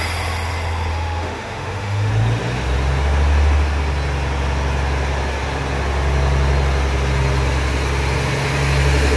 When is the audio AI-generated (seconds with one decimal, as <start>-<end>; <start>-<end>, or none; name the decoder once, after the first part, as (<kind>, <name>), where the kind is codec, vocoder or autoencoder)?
0.9-2.1 (autoencoder, DAC-VAE)